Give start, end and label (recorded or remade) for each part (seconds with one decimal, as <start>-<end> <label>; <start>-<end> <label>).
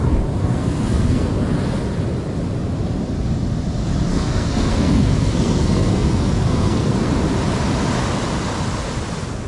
0.0-0.4 recorded; 0.4-1.3 remade; 1.3-4.1 recorded; 4.1-7.1 remade; 7.1-9.5 recorded